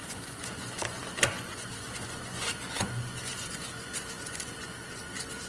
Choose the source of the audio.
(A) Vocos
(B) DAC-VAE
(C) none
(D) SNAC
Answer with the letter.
A